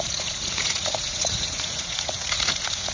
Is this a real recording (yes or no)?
no